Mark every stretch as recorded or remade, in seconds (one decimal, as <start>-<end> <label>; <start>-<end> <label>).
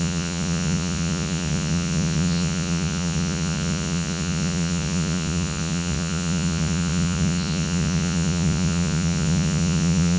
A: 0.0-10.2 remade